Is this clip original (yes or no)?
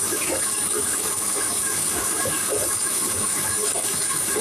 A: no